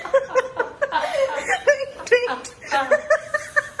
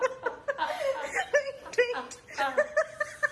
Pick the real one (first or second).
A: second